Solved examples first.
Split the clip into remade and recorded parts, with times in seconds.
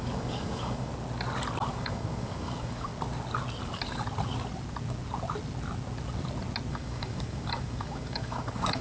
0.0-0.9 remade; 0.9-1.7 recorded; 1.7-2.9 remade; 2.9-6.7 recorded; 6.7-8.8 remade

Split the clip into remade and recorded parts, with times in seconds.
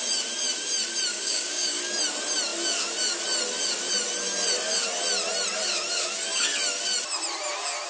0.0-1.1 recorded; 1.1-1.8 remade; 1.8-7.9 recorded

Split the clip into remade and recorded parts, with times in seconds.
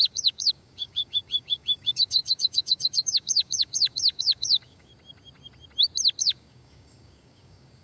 0.0-4.9 remade; 4.9-6.2 recorded; 6.2-7.8 remade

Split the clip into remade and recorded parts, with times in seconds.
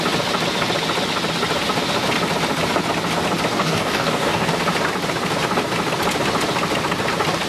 0.0-3.5 recorded; 3.5-4.5 remade; 4.5-7.5 recorded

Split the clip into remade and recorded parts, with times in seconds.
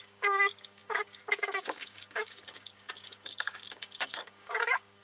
0.0-5.0 remade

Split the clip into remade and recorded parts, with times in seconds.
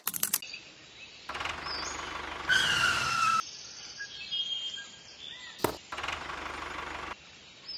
0.0-7.8 recorded